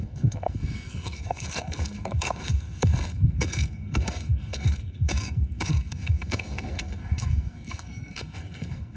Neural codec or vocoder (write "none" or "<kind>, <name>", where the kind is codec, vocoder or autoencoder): codec, SNAC